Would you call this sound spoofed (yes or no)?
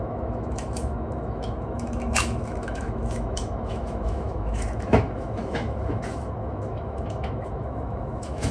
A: yes